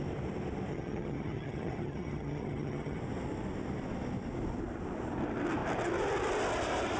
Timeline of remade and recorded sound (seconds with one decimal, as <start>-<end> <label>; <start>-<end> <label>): 0.0-0.7 recorded; 0.7-3.0 remade; 3.0-7.0 recorded